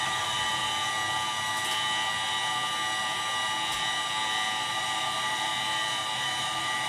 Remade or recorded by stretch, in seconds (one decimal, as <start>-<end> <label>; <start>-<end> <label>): 0.0-0.6 remade; 0.6-4.7 recorded; 4.7-5.5 remade; 5.5-6.2 recorded; 6.2-6.9 remade